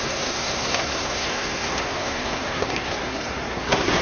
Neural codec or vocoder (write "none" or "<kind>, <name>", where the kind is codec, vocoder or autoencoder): codec, SNAC